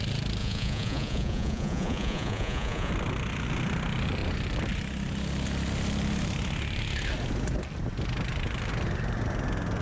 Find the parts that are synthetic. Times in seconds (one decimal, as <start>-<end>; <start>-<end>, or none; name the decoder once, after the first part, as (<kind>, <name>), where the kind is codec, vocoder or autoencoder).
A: 0.4-2.9 (vocoder, Vocos)